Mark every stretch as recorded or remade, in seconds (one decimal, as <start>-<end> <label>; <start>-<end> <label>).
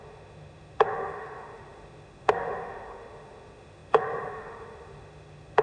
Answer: 0.0-5.6 remade